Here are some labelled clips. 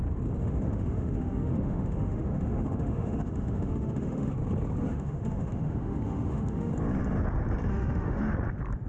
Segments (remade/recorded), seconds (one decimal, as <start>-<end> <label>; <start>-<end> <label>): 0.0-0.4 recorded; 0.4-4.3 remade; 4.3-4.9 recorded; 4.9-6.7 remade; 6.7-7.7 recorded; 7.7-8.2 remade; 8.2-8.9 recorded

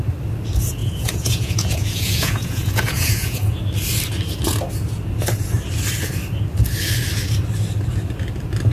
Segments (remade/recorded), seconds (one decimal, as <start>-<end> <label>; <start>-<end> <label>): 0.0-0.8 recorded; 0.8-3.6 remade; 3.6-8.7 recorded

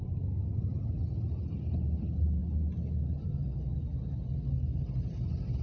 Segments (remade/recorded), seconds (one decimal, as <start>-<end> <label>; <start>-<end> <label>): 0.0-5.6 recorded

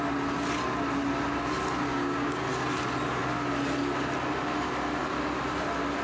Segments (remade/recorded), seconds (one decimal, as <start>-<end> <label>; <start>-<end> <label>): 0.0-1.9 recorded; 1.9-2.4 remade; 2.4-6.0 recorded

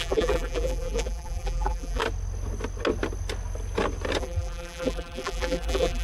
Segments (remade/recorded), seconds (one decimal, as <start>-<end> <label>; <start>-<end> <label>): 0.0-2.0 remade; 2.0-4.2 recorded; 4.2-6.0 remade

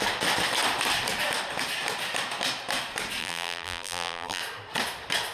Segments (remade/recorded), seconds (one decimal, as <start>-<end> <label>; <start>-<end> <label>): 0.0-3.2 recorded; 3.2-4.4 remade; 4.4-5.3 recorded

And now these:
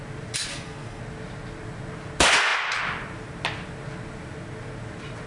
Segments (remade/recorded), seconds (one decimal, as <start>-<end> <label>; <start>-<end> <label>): 0.0-0.5 recorded; 0.5-1.0 remade; 1.0-5.3 recorded